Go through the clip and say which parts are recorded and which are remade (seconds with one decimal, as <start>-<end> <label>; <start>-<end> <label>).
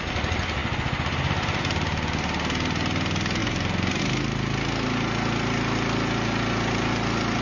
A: 0.0-7.4 recorded